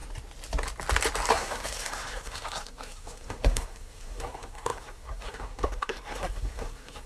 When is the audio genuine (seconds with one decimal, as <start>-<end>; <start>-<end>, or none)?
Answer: 0.0-1.3